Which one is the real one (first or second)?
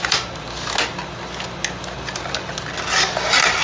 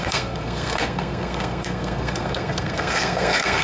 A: first